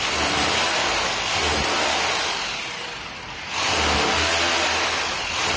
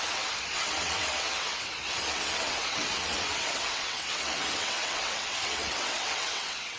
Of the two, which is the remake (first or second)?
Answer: second